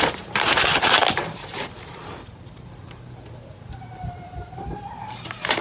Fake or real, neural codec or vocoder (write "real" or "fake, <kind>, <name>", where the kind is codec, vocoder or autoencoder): fake, vocoder, BigVGAN v2